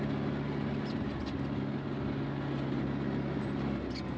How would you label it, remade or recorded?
recorded